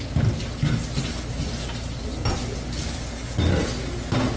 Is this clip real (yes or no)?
yes